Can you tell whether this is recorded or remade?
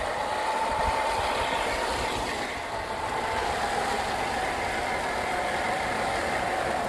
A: recorded